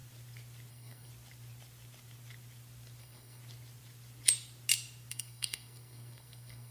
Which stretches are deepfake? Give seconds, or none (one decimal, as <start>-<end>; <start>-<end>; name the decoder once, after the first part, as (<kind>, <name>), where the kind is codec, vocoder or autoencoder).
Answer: 0.7-1.1 (codec, SNAC); 3.0-3.4; 5.1-6.7